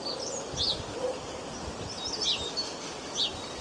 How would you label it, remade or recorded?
recorded